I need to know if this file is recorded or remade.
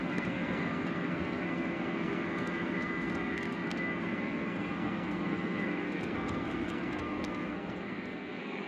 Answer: remade